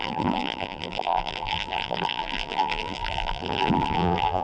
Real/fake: fake